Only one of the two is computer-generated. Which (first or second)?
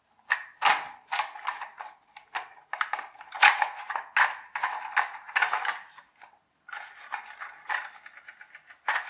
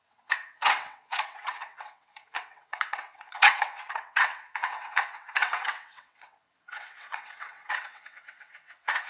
second